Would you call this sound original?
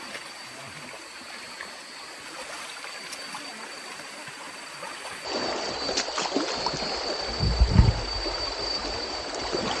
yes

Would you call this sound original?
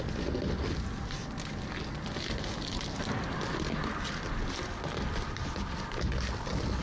yes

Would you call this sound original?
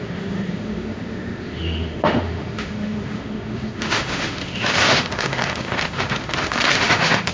no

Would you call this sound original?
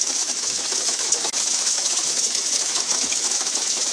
no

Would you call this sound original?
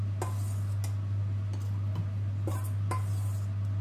yes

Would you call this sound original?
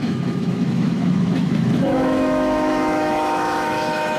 no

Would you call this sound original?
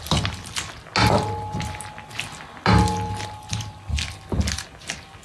yes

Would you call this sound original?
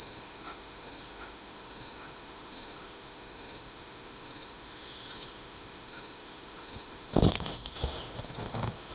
no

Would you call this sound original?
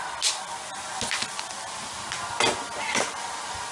yes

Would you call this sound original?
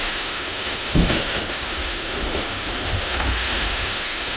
no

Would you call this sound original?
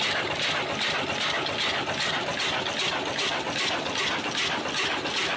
yes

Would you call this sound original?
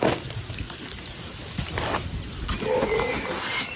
yes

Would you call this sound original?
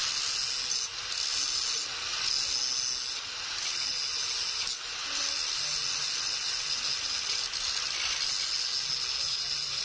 yes